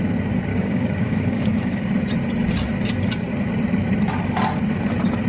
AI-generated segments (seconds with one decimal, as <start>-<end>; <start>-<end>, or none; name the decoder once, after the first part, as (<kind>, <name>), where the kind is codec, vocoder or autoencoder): 0.5-1.9 (codec, DAC)